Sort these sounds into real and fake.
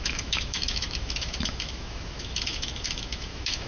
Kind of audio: fake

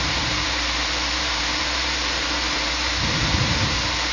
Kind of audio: fake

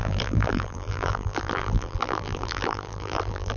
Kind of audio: fake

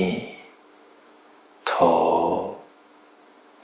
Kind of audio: fake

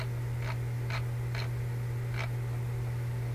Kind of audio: real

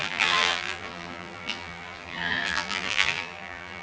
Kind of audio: fake